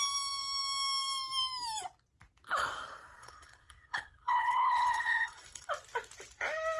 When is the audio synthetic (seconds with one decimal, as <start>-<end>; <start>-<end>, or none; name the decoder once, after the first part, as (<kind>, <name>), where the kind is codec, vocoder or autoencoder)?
3.2-5.7 (codec, HILCodec)